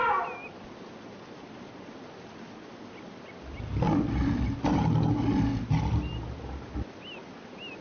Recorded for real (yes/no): yes